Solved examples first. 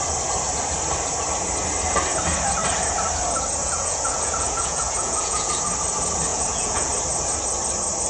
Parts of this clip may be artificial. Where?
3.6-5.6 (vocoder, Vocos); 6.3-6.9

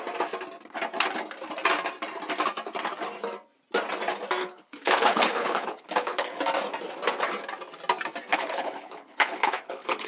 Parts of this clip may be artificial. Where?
4.4-6.4 (codec, HILCodec); 8.3-10.1

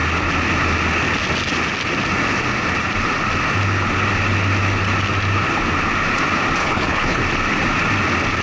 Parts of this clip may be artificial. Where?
6.6-7.2 (codec, HILCodec)